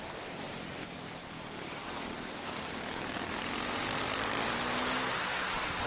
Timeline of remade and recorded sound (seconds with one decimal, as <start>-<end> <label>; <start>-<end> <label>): 0.0-1.2 recorded; 1.2-3.4 remade; 3.4-3.9 recorded; 3.9-4.5 remade; 4.5-5.3 recorded; 5.3-5.9 remade